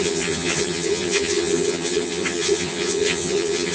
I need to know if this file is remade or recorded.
remade